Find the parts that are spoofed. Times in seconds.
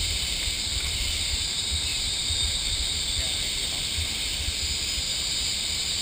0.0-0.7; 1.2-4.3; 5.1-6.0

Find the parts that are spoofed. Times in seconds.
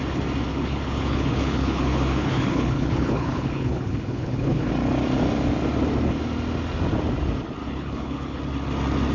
0.5-4.7; 7.6-8.4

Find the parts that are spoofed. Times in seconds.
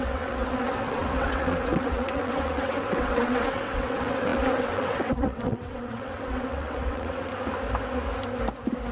0.0-7.3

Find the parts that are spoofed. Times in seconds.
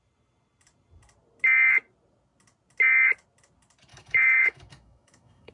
3.9-5.5